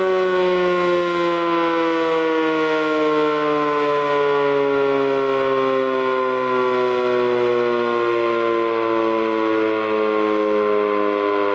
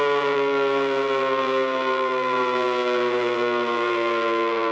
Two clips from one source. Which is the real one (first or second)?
first